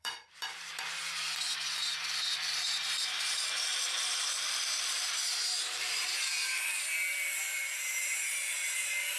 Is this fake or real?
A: fake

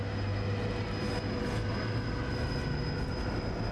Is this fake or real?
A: real